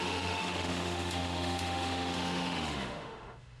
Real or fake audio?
fake